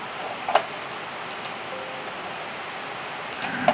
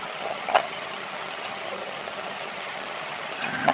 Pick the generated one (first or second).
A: second